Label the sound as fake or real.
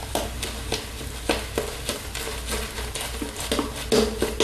real